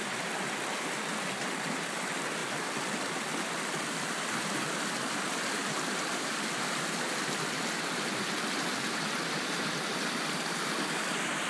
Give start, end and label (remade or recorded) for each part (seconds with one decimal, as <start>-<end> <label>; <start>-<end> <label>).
0.0-2.4 recorded; 2.4-4.3 remade; 4.3-5.6 recorded; 5.6-8.1 remade; 8.1-11.5 recorded